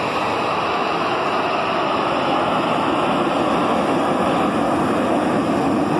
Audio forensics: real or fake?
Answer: real